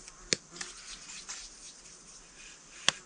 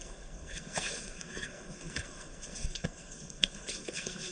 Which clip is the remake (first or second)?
second